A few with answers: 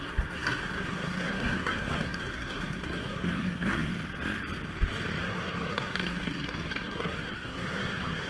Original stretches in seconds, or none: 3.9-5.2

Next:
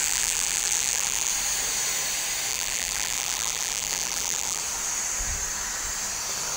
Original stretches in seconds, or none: 1.3-2.5; 4.6-6.6

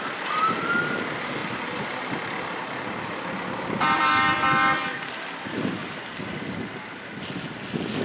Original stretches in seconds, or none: 0.0-8.0

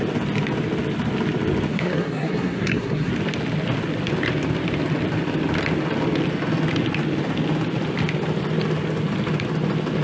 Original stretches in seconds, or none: 0.0-1.7; 3.1-10.0

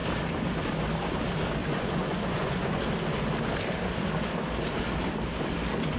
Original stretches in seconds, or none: 0.0-1.6; 2.8-6.0